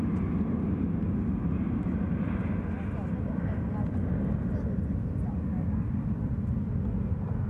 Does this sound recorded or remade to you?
recorded